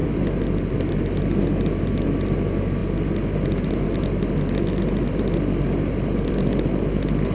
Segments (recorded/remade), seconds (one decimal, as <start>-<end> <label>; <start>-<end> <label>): 0.0-7.3 recorded